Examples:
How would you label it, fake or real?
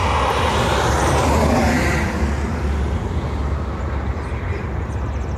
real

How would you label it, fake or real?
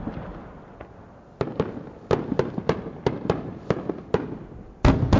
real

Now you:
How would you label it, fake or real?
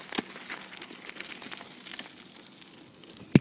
real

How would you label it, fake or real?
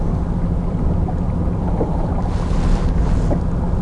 real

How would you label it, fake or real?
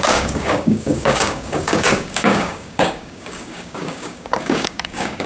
fake